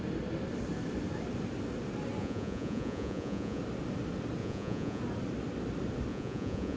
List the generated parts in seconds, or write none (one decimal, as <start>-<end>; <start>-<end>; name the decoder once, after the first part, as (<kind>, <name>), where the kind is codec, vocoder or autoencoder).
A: 2.2-3.6 (vocoder, Vocos); 4.4-5.0; 6.1-6.8

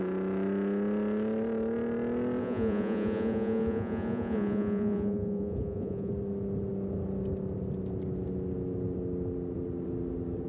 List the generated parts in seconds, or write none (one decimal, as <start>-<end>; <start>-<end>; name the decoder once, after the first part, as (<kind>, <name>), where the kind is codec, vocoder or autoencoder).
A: 2.4-6.1 (vocoder, Vocos)

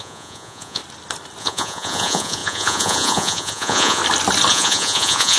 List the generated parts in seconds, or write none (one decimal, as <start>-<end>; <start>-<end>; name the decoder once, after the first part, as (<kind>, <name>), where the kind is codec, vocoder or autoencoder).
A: 0.0-0.8 (vocoder, Vocos); 1.4-4.0; 4.5-5.4

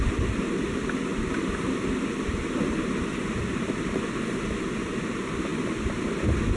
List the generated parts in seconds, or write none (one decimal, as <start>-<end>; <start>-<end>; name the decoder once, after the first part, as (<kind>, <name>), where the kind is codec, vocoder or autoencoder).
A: none

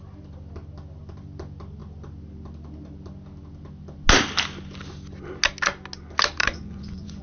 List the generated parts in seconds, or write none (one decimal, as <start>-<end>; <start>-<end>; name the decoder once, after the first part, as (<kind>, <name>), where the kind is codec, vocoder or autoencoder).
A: 6.4-7.2 (vocoder, Vocos)

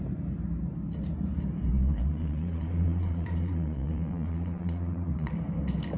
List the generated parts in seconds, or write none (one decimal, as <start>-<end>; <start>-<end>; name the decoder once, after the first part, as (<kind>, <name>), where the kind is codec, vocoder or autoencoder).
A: 1.7-5.3 (vocoder, Vocos)

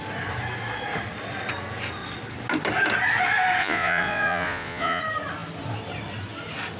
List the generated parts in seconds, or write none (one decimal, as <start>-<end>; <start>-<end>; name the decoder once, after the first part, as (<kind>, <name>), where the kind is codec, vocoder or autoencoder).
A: 3.6-5.0 (vocoder, Vocos)